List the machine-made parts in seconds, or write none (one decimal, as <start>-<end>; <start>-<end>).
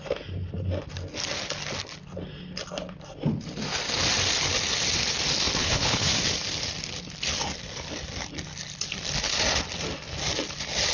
5.6-6.1